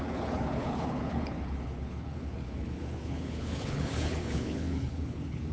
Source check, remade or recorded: remade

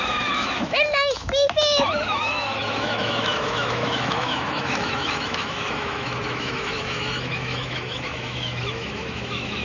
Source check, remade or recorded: remade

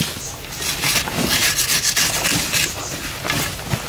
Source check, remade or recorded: recorded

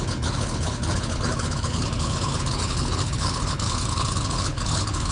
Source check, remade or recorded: remade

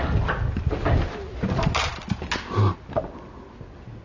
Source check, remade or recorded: recorded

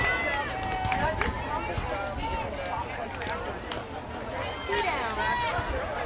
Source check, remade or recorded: recorded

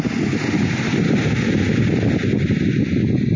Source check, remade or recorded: recorded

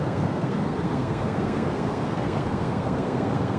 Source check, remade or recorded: remade